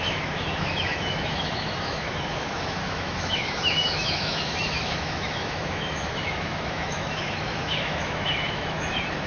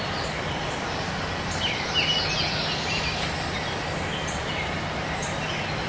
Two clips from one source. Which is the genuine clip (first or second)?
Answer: second